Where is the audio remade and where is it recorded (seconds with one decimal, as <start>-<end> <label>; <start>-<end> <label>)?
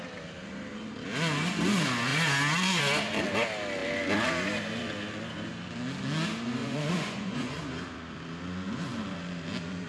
0.0-6.6 recorded; 6.6-7.6 remade; 7.6-9.9 recorded